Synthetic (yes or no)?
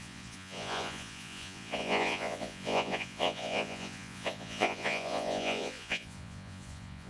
yes